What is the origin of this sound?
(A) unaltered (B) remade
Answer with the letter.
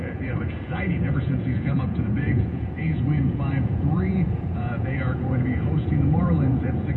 B